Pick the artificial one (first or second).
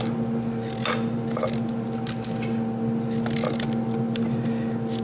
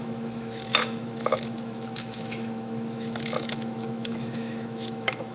second